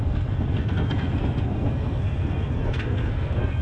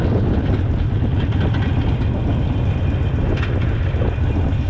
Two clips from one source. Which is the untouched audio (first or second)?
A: second